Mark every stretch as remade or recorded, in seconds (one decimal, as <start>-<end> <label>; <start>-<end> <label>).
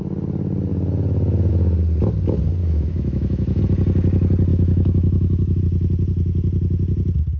0.0-2.6 recorded; 2.6-3.6 remade; 3.6-4.5 recorded; 4.5-5.6 remade; 5.6-7.4 recorded